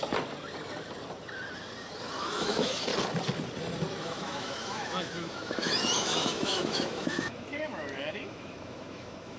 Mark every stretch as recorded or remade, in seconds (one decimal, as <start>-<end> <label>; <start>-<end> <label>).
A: 0.0-2.2 recorded; 2.2-2.9 remade; 2.9-4.0 recorded; 4.0-9.4 remade